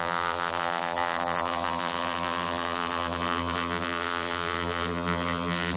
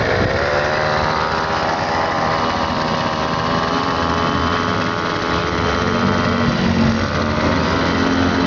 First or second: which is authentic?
second